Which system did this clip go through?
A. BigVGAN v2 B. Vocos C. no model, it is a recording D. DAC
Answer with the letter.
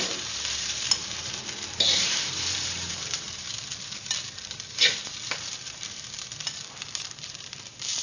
A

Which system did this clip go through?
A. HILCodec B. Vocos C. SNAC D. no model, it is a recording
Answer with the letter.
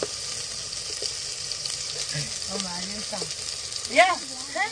D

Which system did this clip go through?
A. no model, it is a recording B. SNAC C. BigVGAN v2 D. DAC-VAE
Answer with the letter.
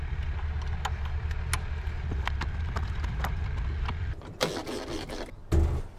A